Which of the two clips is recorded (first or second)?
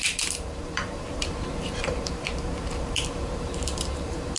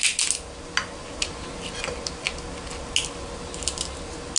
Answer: second